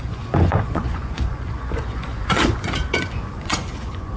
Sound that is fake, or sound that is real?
fake